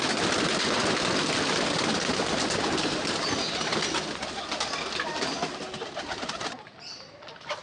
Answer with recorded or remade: recorded